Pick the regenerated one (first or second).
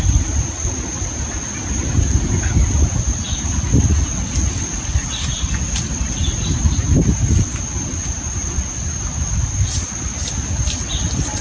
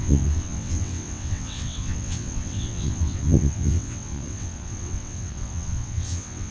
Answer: second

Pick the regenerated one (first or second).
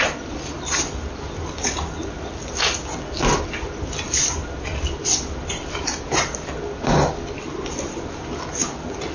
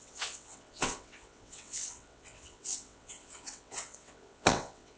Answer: second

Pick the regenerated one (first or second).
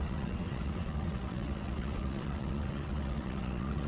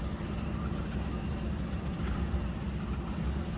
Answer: first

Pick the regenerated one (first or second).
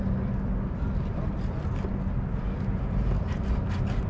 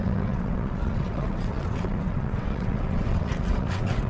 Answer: second